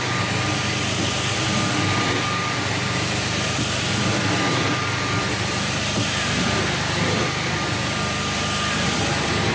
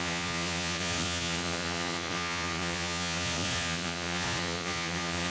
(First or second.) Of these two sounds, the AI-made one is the second